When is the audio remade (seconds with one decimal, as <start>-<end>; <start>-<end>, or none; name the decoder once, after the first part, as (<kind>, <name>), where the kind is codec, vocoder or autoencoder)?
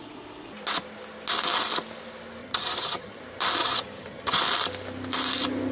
2.4-3.2 (vocoder, HiFi-GAN); 3.6-4.4